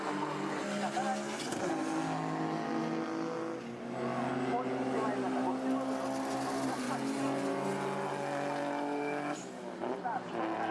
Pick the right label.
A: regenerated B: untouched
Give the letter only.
B